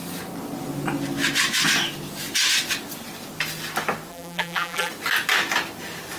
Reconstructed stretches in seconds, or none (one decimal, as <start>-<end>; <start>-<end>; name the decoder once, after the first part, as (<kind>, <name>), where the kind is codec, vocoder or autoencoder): 4.1-4.9 (vocoder, BigVGAN v2)